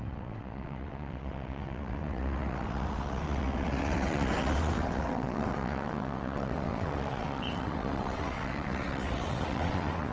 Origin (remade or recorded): remade